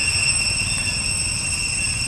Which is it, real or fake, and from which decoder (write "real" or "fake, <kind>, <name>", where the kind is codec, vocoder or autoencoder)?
real